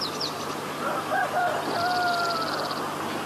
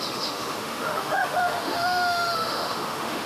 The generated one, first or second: second